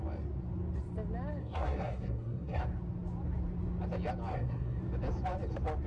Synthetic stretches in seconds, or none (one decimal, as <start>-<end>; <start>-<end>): 1.4-2.6; 4.3-4.8